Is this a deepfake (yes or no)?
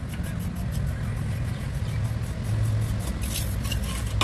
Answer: no